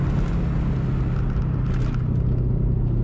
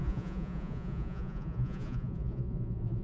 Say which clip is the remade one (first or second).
second